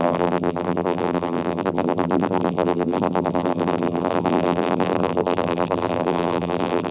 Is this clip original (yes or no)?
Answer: no